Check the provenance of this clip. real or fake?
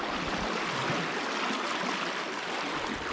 real